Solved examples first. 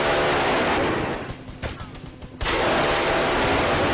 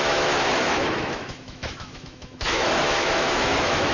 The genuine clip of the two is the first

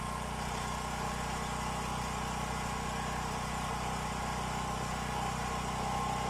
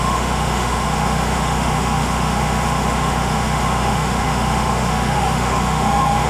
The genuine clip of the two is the first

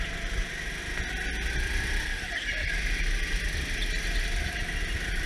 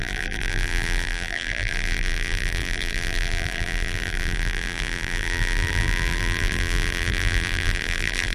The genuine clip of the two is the first